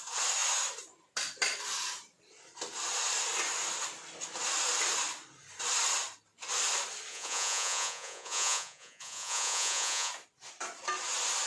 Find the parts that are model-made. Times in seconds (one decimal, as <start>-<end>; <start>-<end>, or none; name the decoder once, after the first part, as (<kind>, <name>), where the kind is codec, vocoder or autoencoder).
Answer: 7.1-10.1 (vocoder, Vocos)